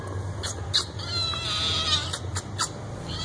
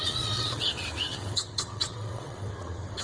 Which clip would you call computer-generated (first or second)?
second